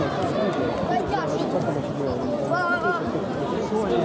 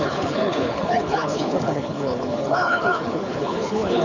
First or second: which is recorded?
first